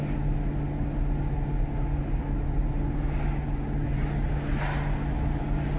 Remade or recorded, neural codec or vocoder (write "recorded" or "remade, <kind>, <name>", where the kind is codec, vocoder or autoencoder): recorded